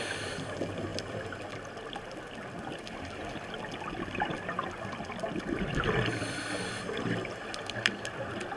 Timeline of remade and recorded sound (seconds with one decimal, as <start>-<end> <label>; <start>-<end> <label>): 0.0-8.6 recorded